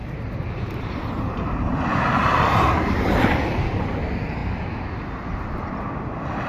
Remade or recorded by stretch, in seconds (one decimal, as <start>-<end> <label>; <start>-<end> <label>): 0.0-3.9 remade; 3.9-4.4 recorded; 4.4-5.0 remade; 5.0-6.5 recorded